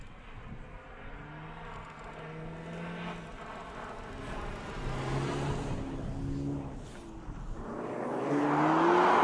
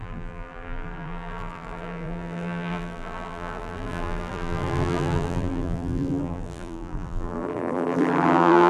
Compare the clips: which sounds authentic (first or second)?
first